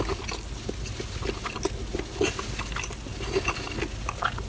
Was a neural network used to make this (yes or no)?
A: no